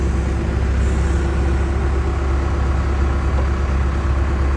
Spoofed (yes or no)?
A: no